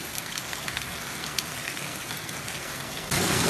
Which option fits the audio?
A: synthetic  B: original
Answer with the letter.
A